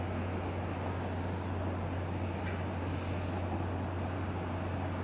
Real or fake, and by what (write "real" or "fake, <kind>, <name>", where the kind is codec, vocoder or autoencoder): real